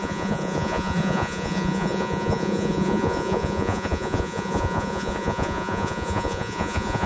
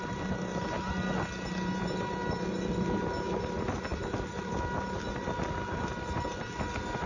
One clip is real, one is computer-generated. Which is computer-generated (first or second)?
first